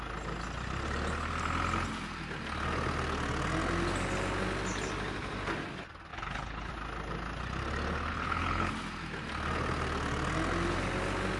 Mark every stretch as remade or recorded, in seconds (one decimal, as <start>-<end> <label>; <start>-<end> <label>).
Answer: 0.0-6.1 recorded; 6.1-6.7 remade; 6.7-8.1 recorded; 8.1-8.7 remade; 8.7-11.4 recorded